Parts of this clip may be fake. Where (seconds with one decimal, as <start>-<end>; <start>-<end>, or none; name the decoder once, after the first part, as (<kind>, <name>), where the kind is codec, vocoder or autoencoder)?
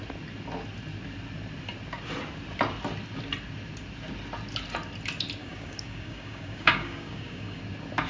5.4-7.6 (codec, DAC)